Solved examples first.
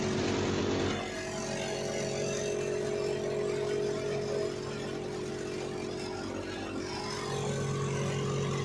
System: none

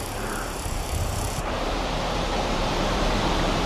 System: vocoder, BigVGAN v2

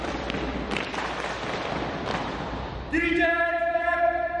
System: vocoder, BigVGAN v2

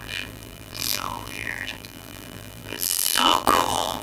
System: vocoder, BigVGAN v2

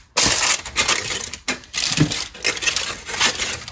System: none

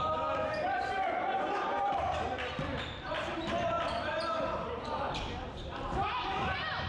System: vocoder, BigVGAN v2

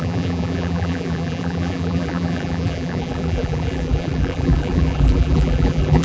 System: vocoder, BigVGAN v2